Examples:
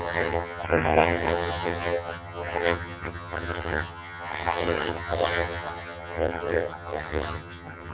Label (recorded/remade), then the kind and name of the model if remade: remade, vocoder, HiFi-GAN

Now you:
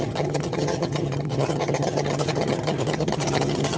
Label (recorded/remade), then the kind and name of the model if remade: remade, vocoder, HiFi-GAN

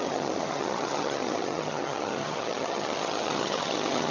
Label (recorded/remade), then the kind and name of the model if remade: remade, vocoder, HiFi-GAN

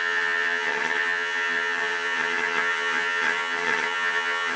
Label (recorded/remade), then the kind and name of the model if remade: remade, vocoder, HiFi-GAN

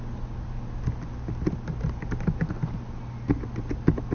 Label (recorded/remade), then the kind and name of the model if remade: recorded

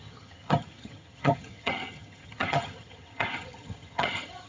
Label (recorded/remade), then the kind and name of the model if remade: remade, vocoder, HiFi-GAN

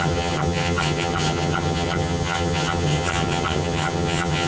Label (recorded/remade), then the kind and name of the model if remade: remade, vocoder, HiFi-GAN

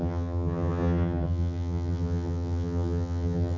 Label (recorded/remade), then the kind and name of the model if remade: remade, vocoder, HiFi-GAN